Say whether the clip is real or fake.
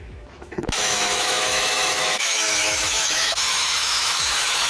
fake